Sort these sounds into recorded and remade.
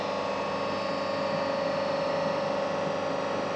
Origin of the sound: recorded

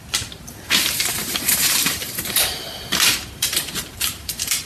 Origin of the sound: remade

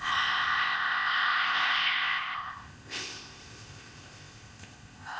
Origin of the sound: remade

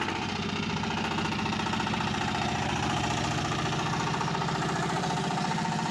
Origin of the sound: remade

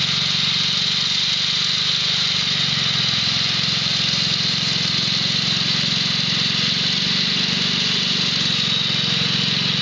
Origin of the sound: recorded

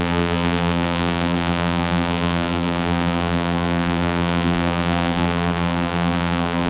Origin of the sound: remade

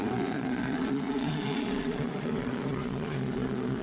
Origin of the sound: remade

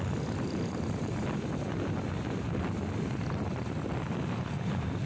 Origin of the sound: recorded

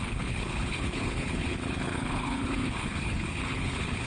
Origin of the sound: remade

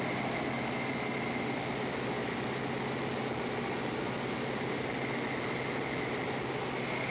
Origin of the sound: recorded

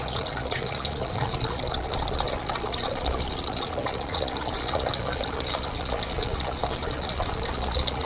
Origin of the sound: remade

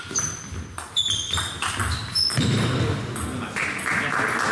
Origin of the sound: recorded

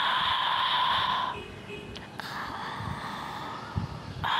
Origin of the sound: recorded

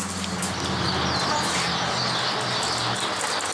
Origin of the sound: recorded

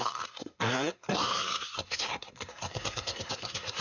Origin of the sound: remade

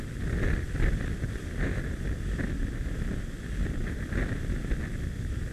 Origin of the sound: recorded